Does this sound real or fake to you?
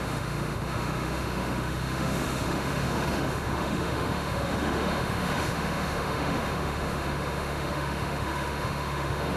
fake